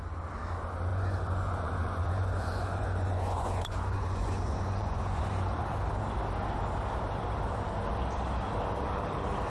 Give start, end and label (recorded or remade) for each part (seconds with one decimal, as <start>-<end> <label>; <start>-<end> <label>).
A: 0.0-0.9 recorded; 0.9-5.6 remade; 5.6-9.5 recorded